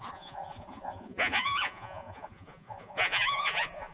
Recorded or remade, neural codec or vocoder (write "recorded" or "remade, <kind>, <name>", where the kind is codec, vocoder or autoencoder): remade, vocoder, Vocos